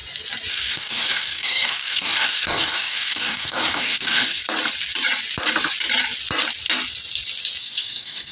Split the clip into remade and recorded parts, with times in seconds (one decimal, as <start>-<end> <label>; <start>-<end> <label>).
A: 0.0-0.5 recorded; 0.5-4.4 remade; 4.4-7.6 recorded; 7.6-8.3 remade